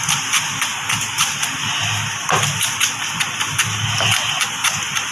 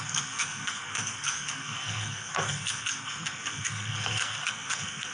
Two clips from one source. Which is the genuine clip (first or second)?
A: first